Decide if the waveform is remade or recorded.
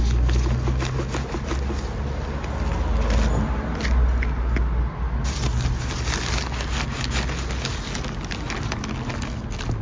recorded